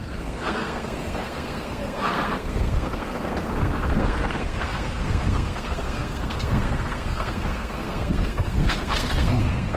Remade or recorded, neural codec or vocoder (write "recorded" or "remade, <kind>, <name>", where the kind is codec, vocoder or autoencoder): remade, codec, SNAC